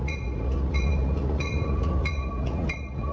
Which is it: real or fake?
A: fake